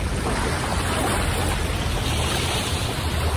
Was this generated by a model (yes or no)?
no